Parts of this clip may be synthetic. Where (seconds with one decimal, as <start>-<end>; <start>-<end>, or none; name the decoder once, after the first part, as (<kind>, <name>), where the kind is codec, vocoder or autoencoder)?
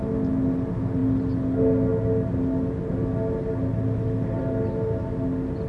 none